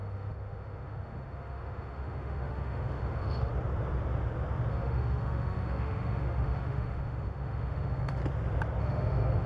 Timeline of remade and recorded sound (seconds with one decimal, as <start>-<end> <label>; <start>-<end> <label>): 0.0-3.5 remade; 3.5-4.7 recorded; 4.7-8.2 remade; 8.2-8.8 recorded; 8.8-9.5 remade